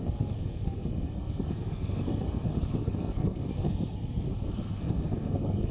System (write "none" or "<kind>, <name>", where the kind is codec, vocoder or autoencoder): codec, SNAC